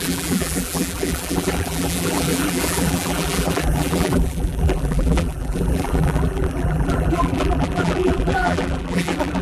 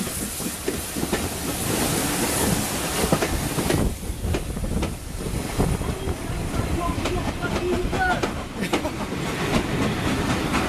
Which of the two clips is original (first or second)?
second